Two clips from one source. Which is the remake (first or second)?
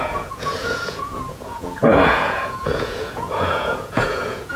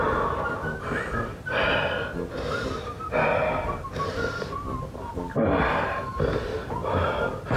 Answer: first